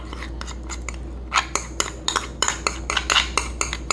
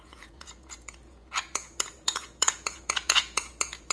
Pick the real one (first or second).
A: first